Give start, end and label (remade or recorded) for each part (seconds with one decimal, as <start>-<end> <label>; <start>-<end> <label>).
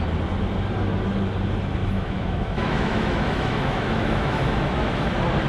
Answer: 0.0-1.8 recorded; 1.8-5.1 remade; 5.1-5.5 recorded